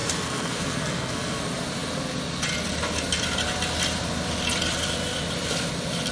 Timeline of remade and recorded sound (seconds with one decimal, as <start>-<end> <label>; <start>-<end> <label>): 0.0-1.4 remade; 1.4-6.1 recorded